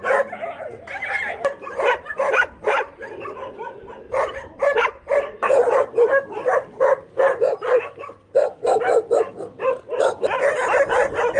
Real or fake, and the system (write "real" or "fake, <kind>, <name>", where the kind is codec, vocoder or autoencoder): real